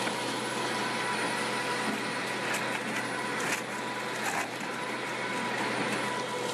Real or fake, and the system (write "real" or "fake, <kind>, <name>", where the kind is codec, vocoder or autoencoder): real